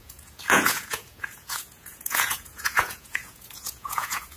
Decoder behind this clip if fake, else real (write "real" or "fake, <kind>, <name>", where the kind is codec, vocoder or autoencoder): fake, vocoder, Vocos